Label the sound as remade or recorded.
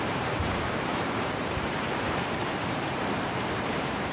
remade